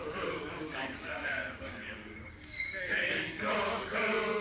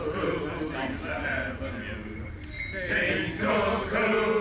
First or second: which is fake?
first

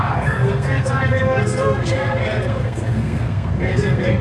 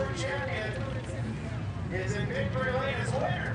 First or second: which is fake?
first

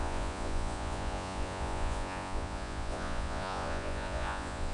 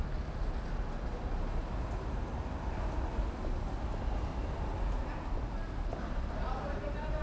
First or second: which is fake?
first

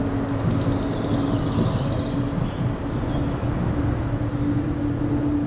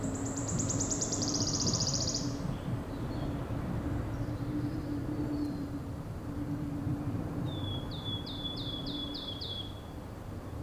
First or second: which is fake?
second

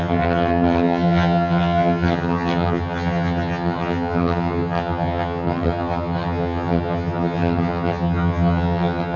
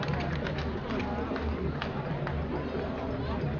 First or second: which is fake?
first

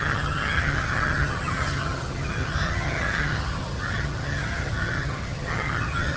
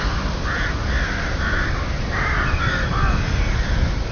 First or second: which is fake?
first